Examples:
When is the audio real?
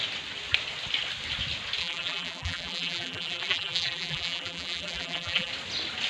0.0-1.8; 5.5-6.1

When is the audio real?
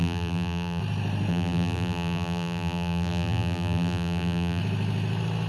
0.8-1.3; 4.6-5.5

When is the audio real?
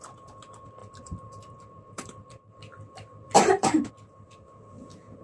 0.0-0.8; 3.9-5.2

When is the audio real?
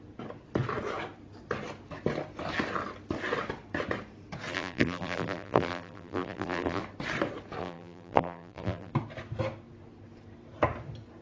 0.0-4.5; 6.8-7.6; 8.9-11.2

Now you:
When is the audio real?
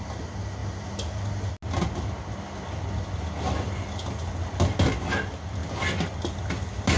0.0-7.0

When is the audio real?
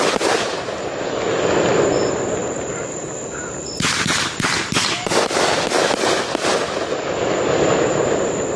0.0-2.4; 5.7-8.6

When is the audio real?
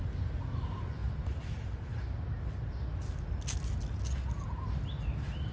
0.0-1.0; 2.0-5.5